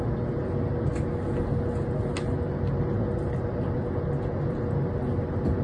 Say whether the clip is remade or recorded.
recorded